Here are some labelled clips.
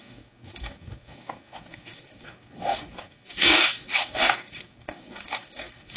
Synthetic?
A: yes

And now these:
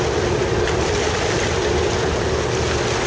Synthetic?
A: no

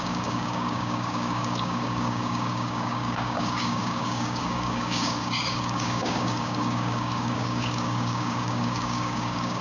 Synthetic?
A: yes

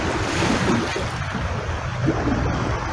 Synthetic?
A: no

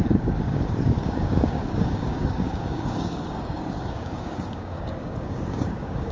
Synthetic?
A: yes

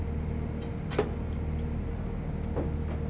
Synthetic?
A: no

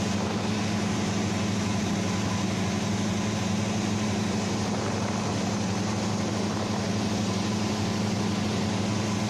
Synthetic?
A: no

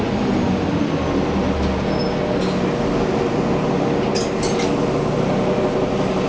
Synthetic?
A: no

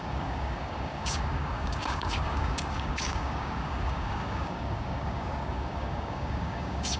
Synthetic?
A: yes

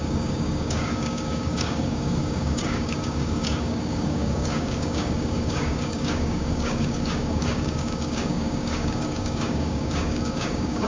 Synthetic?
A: yes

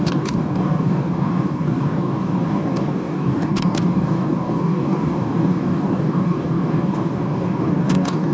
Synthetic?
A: yes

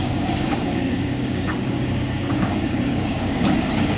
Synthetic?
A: yes